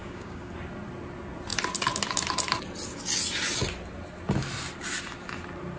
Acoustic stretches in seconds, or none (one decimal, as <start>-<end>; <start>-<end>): 0.5-5.8